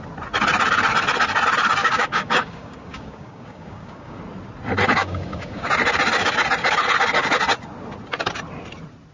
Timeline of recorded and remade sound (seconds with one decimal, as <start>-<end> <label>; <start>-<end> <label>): 0.0-1.8 recorded; 1.8-4.2 remade; 4.2-5.0 recorded; 5.0-5.7 remade; 5.7-9.1 recorded